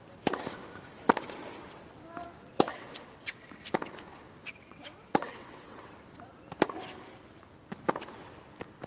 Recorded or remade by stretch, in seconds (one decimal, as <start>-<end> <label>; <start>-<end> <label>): 0.0-2.7 recorded; 2.7-3.6 remade; 3.6-4.4 recorded; 4.4-5.9 remade; 5.9-8.9 recorded